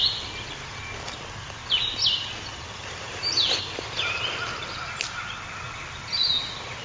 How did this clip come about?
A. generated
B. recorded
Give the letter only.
B